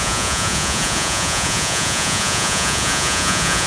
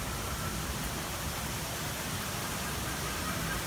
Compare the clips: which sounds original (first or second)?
second